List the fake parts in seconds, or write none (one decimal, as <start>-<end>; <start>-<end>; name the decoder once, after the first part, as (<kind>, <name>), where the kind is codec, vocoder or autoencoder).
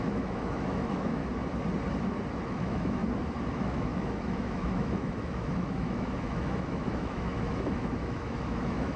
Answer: 0.0-1.2 (autoencoder, DAC-VAE); 2.4-3.0; 3.5-9.0